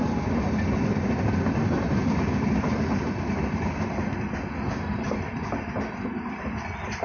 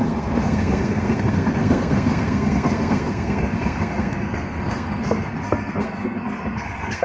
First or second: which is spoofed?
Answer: second